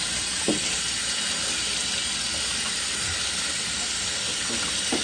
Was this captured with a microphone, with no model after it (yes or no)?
yes